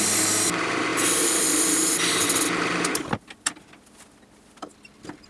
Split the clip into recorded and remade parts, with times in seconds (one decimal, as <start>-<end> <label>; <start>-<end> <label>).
0.0-5.3 recorded